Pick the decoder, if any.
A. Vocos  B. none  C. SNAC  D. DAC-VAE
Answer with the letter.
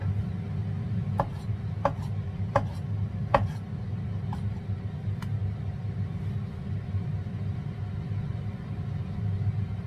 B